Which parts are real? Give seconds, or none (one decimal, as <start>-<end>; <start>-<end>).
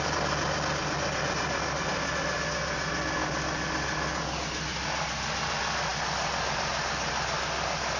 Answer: 0.0-8.0